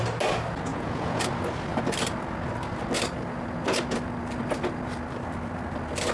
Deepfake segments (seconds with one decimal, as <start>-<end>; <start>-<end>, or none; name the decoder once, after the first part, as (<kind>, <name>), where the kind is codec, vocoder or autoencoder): 0.7-1.2 (vocoder, Vocos)